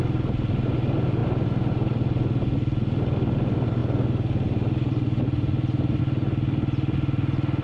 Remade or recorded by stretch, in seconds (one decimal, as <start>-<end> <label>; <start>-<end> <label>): 0.0-7.6 recorded